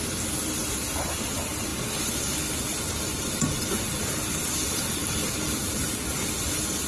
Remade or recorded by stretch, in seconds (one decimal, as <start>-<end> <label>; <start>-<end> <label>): 0.0-6.9 recorded